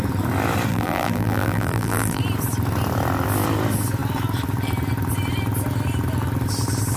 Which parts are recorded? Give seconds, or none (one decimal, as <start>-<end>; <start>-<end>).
0.0-0.7; 2.2-7.0